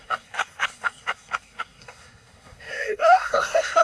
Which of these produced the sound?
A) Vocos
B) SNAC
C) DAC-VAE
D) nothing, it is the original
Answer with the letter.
B